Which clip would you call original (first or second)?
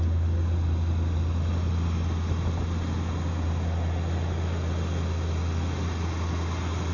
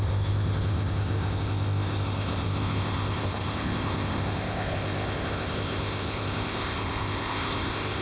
first